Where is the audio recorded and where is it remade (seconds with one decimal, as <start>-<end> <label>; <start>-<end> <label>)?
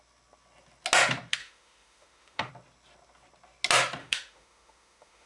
0.0-1.4 recorded; 1.4-2.5 remade; 2.5-4.0 recorded; 4.0-5.3 remade